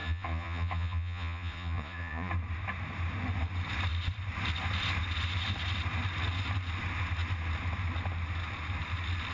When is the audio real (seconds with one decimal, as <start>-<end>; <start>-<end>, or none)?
2.3-9.3